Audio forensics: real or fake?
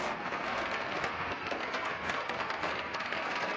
fake